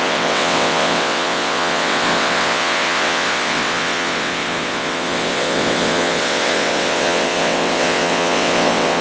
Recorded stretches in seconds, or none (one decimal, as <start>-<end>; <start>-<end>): none